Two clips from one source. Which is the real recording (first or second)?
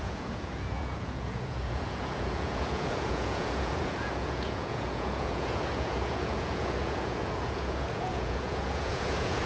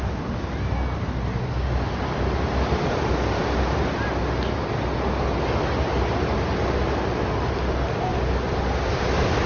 second